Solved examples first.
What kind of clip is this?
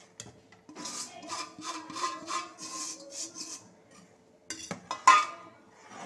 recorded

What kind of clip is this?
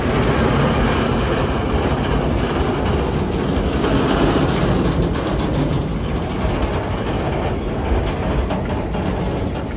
recorded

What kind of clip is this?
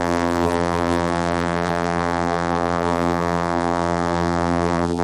remade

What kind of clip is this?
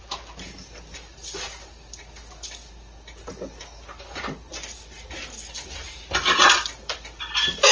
recorded